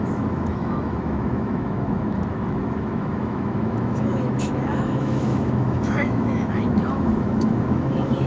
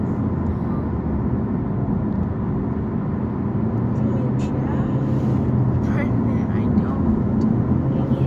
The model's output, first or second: first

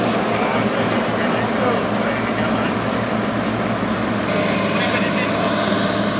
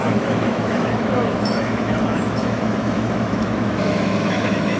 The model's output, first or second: second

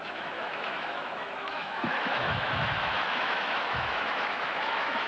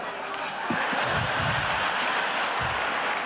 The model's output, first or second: first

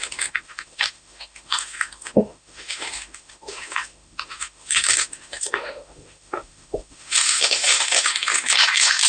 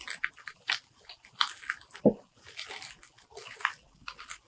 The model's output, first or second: first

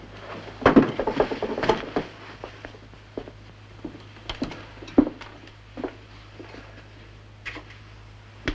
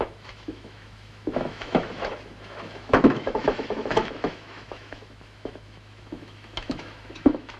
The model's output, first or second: second